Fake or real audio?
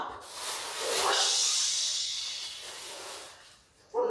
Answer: real